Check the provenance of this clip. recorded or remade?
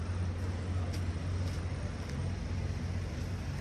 recorded